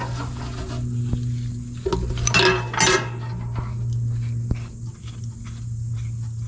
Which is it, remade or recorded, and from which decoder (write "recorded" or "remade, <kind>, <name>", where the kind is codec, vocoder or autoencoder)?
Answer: recorded